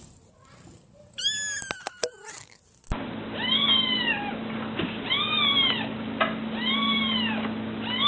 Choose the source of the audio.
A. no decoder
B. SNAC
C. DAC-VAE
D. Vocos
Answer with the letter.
A